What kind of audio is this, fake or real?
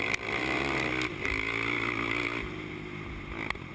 real